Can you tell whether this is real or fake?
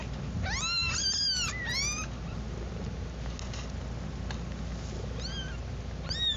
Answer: real